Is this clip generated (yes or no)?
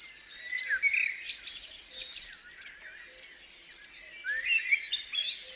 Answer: no